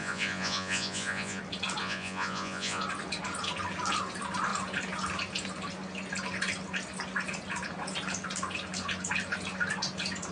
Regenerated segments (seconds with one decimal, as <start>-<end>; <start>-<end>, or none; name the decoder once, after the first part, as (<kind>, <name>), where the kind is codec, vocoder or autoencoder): 0.0-1.4 (vocoder, Vocos); 1.8-2.8